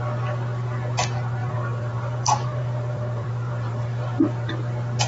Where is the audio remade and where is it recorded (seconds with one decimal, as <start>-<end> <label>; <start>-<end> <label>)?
0.0-1.4 recorded; 1.4-4.5 remade; 4.5-5.1 recorded